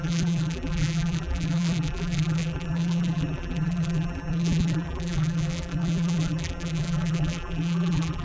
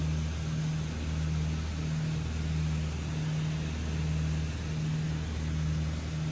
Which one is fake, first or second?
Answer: first